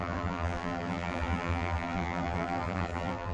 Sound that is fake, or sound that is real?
fake